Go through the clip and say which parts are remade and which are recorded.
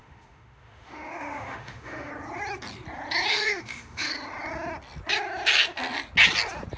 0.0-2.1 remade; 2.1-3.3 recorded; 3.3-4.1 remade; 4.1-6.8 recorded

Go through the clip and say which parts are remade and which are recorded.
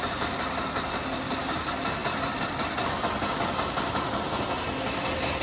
0.0-2.0 recorded; 2.0-2.8 remade; 2.8-5.4 recorded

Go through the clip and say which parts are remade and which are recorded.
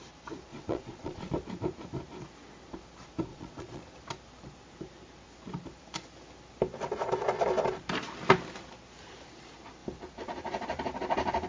0.0-0.5 recorded; 0.5-1.3 remade; 1.3-3.3 recorded; 3.3-3.8 remade; 3.8-11.5 recorded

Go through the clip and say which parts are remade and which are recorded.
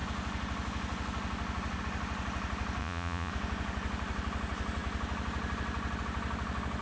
0.0-2.8 recorded; 2.8-3.3 remade; 3.3-6.8 recorded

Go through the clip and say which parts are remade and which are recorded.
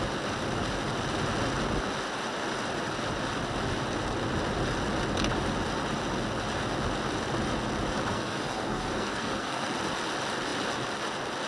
0.0-8.1 recorded; 8.1-9.7 remade; 9.7-11.5 recorded